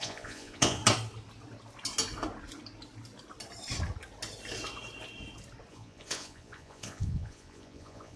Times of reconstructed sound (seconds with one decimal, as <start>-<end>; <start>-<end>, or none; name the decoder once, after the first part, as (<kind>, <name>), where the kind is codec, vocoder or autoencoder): 0.0-0.8 (vocoder, Vocos); 5.7-8.2